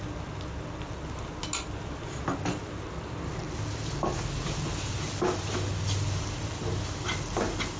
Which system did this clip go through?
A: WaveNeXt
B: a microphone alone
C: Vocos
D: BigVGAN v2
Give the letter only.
B